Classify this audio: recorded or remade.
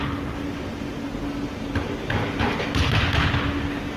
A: recorded